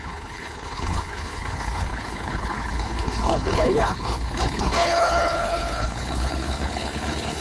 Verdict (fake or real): fake